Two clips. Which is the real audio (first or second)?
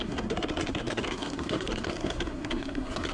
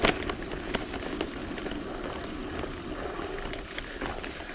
second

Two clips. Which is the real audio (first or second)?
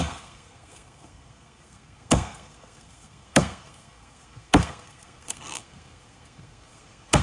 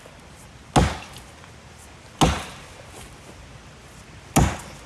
second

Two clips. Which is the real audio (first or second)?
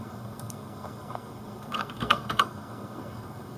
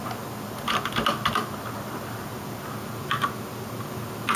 second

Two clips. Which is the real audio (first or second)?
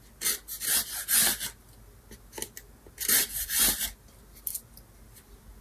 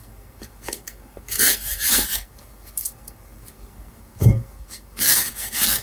first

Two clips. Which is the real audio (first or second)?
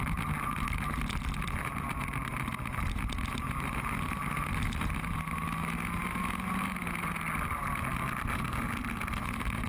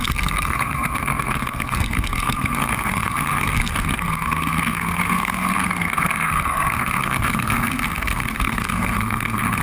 first